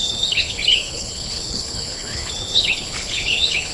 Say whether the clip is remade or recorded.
remade